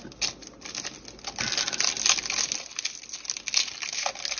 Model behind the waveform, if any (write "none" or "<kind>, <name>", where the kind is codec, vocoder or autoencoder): none